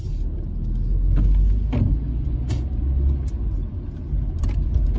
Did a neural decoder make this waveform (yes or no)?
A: no